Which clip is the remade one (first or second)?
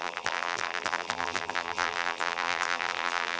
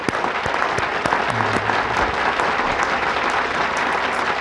first